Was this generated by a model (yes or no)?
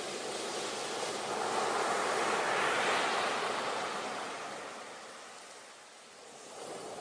no